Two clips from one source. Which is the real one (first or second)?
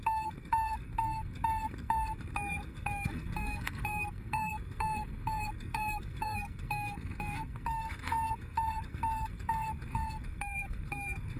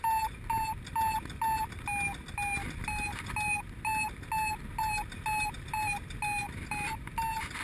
second